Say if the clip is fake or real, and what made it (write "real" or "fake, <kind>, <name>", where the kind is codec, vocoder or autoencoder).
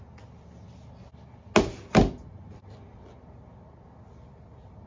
real